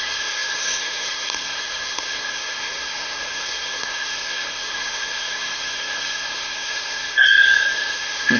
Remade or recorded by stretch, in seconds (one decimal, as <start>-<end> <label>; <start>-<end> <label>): 0.0-8.4 remade